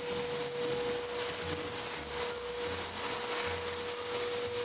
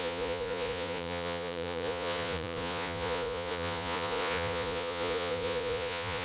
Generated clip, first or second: second